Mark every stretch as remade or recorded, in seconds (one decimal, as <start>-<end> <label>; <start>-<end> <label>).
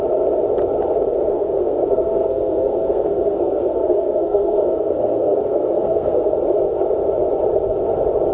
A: 0.0-1.3 recorded; 1.3-6.3 remade; 6.3-8.3 recorded